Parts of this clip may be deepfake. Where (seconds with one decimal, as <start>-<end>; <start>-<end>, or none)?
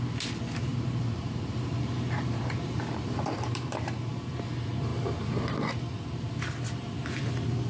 0.7-4.1